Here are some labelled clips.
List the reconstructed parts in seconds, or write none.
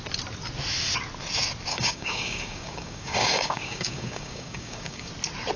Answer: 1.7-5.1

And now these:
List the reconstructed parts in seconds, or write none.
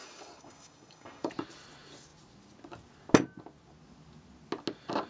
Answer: 0.0-1.3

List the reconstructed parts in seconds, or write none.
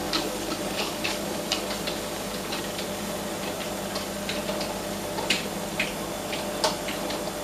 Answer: 0.0-2.6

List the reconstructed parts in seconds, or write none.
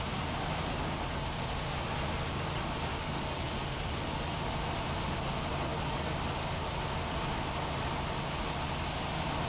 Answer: 2.9-3.5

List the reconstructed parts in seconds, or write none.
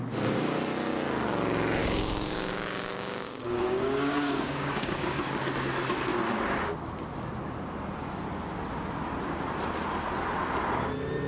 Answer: 1.8-5.4